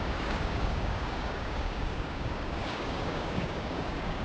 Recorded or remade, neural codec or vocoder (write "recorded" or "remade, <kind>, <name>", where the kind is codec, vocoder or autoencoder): remade, codec, DAC